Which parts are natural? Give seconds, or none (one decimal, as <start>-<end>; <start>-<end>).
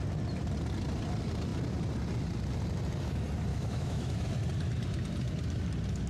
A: 0.0-3.5; 4.3-6.1